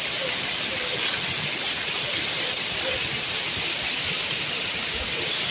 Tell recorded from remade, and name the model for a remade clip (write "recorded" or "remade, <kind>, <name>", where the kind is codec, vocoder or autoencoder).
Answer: recorded